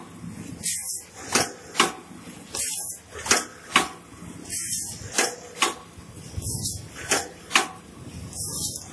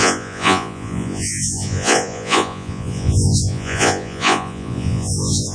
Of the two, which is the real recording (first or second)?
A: first